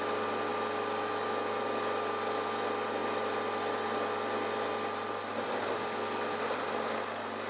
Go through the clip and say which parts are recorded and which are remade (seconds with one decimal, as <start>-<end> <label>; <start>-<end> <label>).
0.0-7.5 recorded